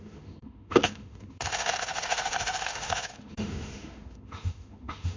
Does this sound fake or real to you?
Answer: fake